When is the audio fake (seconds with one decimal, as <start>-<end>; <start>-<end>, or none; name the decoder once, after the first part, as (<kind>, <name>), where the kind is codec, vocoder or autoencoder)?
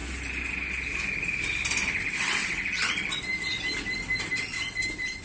2.0-3.5 (vocoder, BigVGAN v2); 4.1-5.2